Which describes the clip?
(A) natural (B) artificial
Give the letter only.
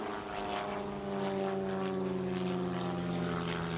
A